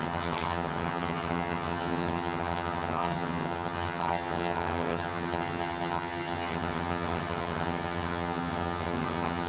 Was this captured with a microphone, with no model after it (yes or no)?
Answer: no